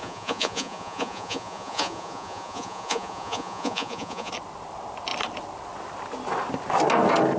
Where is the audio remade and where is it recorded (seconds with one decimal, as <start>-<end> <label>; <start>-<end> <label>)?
0.0-4.3 remade; 4.3-7.4 recorded